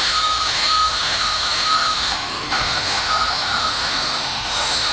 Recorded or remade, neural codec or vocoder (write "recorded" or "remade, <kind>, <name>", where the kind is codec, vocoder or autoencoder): remade, autoencoder, DAC-VAE